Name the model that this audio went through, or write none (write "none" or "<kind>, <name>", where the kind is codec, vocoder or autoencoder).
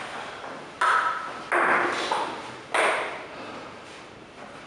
none